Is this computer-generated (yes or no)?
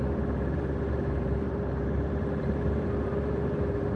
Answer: yes